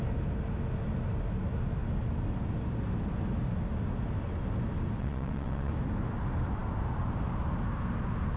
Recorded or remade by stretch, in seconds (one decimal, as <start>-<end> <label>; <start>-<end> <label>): 0.0-5.0 recorded; 5.0-5.7 remade; 5.7-8.4 recorded